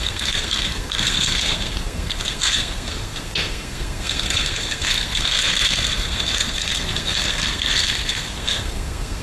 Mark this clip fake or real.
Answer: fake